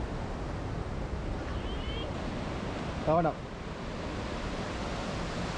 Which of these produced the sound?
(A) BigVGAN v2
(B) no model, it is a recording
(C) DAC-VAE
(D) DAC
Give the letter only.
A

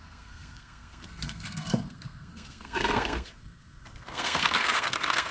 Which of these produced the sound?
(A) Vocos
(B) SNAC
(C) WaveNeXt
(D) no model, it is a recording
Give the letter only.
B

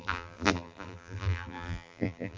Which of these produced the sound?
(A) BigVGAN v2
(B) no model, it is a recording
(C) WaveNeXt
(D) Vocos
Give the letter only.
A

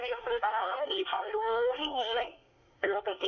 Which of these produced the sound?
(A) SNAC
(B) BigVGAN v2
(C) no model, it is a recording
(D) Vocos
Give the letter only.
A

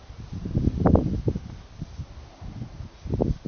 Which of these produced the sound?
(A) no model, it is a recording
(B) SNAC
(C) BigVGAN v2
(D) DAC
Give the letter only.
A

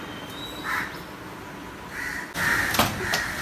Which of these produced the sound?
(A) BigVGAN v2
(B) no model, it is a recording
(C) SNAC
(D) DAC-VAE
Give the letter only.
B